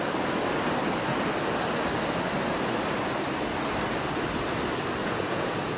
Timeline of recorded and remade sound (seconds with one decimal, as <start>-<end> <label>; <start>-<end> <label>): 0.0-5.0 recorded; 5.0-5.8 remade